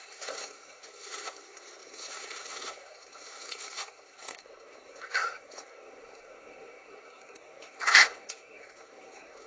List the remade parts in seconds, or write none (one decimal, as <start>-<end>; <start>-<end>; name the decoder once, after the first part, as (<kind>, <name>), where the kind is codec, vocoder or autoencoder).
0.0-9.5 (codec, SNAC)